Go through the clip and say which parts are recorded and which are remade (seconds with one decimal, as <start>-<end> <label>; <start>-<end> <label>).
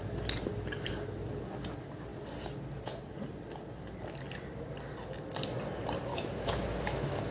0.0-6.1 recorded; 6.1-7.3 remade